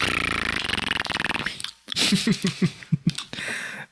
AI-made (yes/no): no